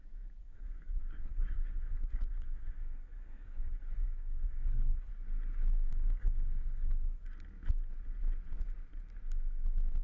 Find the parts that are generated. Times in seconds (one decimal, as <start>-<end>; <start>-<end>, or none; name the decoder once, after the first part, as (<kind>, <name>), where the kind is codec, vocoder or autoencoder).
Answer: 0.4-5.1 (codec, SNAC); 5.9-7.2